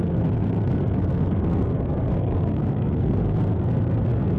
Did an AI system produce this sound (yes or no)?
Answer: yes